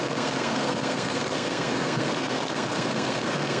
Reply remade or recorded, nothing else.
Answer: remade